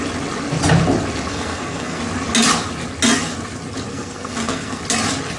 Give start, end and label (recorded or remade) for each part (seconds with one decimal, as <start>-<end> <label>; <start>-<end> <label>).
0.0-1.3 recorded; 1.3-2.0 remade; 2.0-3.9 recorded; 3.9-4.8 remade; 4.8-5.4 recorded